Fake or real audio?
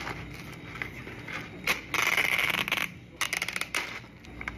real